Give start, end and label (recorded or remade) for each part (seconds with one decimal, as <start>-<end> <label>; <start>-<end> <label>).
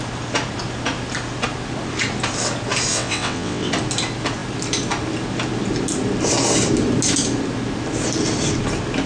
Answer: 0.0-2.9 recorded; 2.9-3.7 remade; 3.7-9.1 recorded